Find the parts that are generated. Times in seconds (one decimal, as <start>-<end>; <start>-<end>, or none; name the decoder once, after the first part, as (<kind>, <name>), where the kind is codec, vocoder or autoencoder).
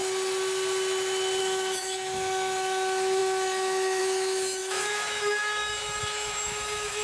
1.4-7.0 (autoencoder, DAC-VAE)